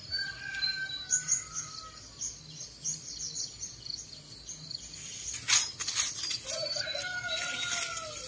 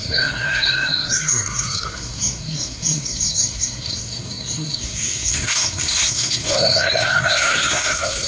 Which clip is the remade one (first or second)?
second